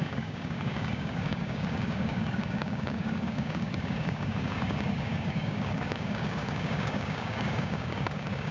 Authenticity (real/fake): fake